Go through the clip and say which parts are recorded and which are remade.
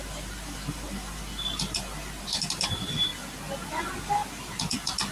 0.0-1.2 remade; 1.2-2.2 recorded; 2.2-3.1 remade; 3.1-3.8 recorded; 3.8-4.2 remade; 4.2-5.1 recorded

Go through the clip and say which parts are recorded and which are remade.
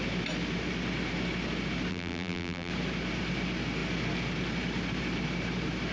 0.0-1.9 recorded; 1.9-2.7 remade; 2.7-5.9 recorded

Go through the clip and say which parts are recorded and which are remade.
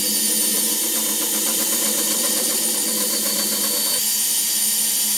0.0-0.5 recorded; 0.5-3.6 remade; 3.6-5.2 recorded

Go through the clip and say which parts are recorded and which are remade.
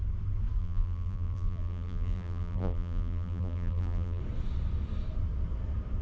0.0-0.6 recorded; 0.6-4.2 remade; 4.2-6.0 recorded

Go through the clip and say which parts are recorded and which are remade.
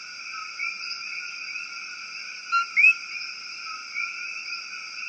0.0-5.1 recorded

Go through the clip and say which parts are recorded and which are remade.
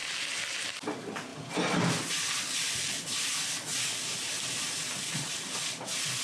0.0-1.3 recorded; 1.3-2.8 remade; 2.8-6.2 recorded